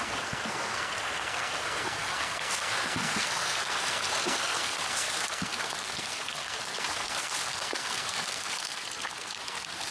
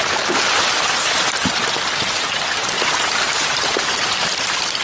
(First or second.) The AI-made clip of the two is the first